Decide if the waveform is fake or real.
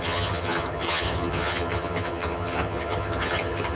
fake